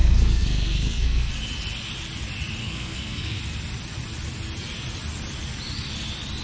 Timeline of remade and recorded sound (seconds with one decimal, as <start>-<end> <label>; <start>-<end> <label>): 0.0-1.3 remade; 1.3-2.6 recorded; 2.6-3.4 remade; 3.4-6.4 recorded